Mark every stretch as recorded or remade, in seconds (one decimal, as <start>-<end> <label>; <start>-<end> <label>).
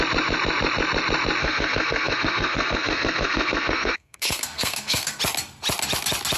0.0-1.4 recorded; 1.4-5.2 remade; 5.2-6.4 recorded